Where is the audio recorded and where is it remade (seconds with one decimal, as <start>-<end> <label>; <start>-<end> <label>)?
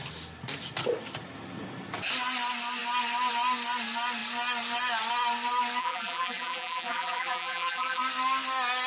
0.0-5.8 recorded; 5.8-8.0 remade; 8.0-8.9 recorded